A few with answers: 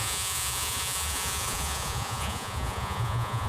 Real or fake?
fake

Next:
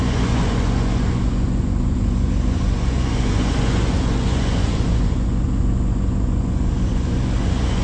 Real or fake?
fake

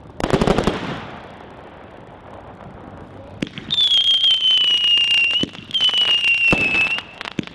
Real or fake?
real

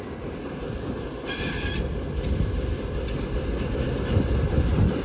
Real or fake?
real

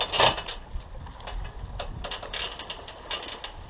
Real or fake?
real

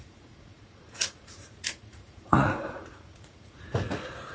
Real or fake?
fake